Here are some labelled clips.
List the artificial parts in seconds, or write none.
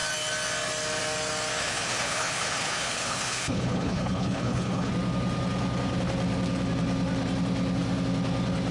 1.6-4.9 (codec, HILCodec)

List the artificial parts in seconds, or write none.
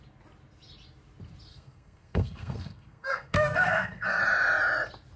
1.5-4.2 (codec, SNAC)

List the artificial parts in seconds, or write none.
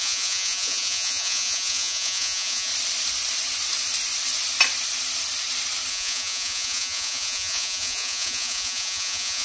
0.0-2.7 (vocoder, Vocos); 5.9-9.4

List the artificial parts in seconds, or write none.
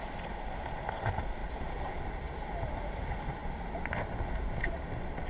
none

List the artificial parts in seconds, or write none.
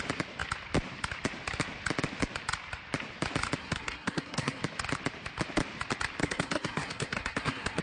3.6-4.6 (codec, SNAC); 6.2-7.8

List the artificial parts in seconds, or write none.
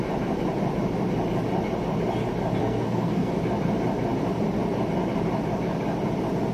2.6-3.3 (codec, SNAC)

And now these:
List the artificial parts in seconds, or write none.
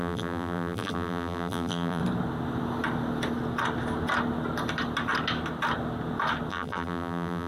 0.0-2.0 (vocoder, BigVGAN v2); 6.5-7.5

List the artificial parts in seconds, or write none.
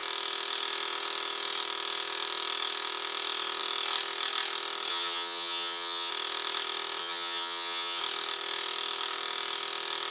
4.9-6.1 (vocoder, HiFi-GAN); 7.0-8.0